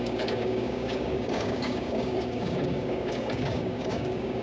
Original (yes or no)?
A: no